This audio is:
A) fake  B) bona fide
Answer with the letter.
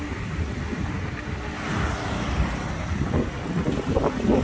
B